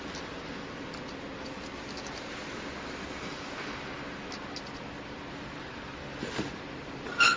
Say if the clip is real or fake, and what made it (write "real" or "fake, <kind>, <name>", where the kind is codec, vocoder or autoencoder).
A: real